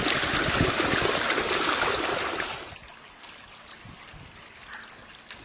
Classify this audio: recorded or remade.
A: recorded